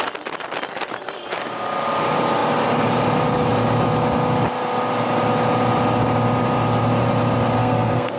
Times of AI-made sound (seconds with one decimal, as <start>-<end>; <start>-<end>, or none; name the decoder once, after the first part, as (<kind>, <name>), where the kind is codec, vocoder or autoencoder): 7.6-8.2 (codec, SNAC)